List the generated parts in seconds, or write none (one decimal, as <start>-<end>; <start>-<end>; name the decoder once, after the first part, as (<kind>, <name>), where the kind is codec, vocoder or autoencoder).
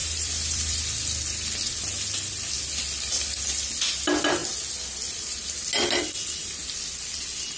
0.0-0.8 (vocoder, BigVGAN v2)